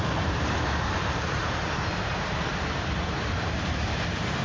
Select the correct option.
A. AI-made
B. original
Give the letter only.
A